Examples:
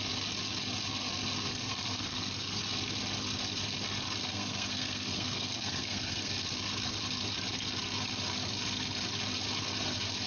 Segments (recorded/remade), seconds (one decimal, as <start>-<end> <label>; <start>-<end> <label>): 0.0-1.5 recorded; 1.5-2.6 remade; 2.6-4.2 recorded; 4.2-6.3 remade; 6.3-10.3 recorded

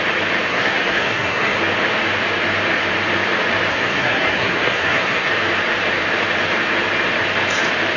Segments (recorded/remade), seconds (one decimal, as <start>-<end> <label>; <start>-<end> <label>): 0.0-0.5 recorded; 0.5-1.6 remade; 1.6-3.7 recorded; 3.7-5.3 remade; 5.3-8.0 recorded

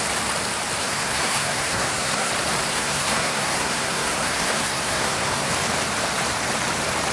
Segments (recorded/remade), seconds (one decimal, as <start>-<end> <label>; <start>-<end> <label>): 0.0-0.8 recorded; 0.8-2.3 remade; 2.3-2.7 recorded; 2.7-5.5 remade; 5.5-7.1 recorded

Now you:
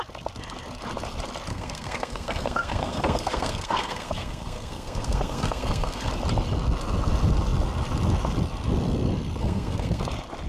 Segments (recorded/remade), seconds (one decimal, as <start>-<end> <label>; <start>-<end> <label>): 0.0-1.5 recorded; 1.5-6.1 remade; 6.1-9.4 recorded; 9.4-10.0 remade; 10.0-10.5 recorded

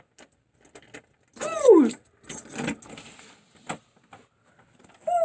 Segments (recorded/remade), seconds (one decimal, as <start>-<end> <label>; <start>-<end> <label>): 0.0-5.2 recorded